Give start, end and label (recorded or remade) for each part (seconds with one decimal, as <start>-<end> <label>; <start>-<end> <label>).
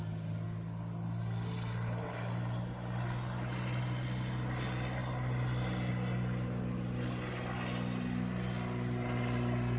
0.0-9.8 recorded